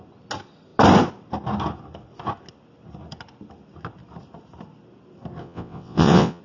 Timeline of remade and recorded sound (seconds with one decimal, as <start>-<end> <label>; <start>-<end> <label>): 0.0-5.4 recorded; 5.4-6.4 remade